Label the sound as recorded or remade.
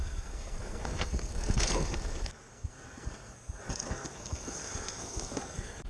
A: remade